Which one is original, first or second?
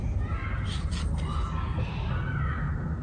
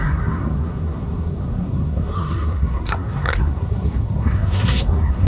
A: first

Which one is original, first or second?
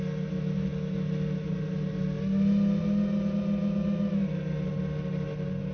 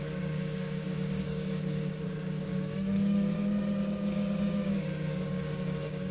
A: first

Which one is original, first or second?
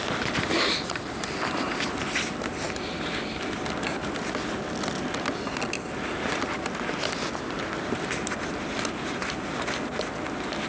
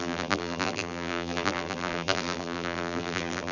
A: first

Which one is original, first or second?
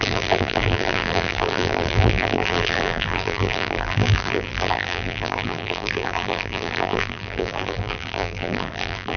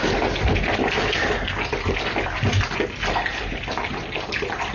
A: second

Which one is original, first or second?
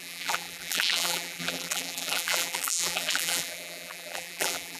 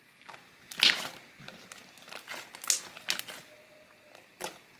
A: second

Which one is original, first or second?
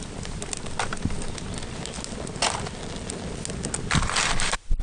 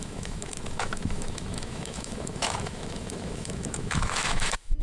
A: first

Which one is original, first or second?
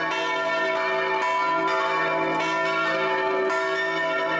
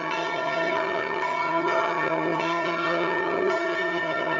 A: first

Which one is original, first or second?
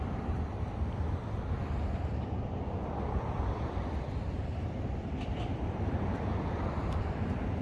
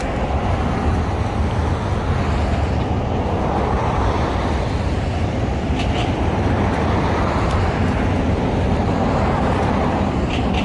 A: second